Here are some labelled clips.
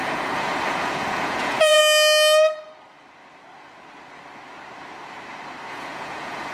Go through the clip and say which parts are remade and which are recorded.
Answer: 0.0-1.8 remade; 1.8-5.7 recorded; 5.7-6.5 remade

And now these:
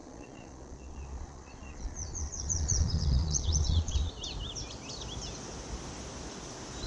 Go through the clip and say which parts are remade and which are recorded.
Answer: 0.0-4.1 remade; 4.1-6.9 recorded

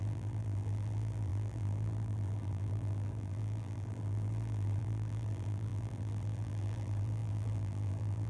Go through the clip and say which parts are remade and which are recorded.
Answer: 0.0-8.3 remade

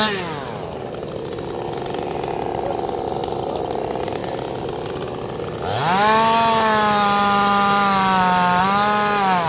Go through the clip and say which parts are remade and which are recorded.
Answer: 0.0-9.5 recorded

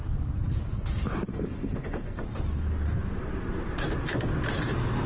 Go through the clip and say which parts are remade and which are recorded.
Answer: 0.0-1.3 recorded; 1.3-2.2 remade; 2.2-5.1 recorded

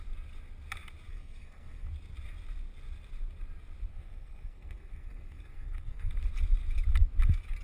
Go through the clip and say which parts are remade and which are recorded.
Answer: 0.0-1.1 recorded; 1.1-1.9 remade; 1.9-3.9 recorded; 3.9-6.1 remade; 6.1-7.6 recorded

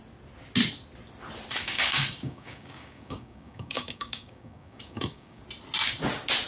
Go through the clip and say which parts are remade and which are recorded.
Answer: 0.0-1.6 recorded; 1.6-5.4 remade; 5.4-6.5 recorded

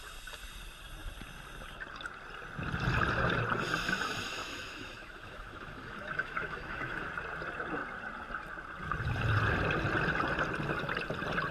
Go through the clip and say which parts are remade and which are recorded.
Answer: 0.0-4.4 recorded; 4.4-7.1 remade; 7.1-11.5 recorded